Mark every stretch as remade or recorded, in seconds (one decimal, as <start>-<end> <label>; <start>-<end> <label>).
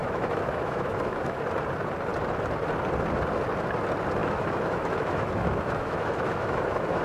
0.0-1.4 remade; 1.4-4.2 recorded; 4.2-7.0 remade